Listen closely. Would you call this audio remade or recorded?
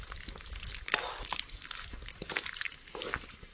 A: recorded